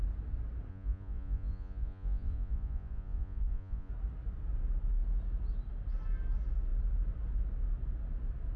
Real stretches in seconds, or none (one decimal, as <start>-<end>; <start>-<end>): 0.0-0.7; 3.9-8.6